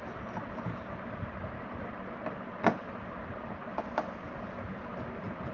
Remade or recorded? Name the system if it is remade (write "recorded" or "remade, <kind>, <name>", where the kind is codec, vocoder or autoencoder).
recorded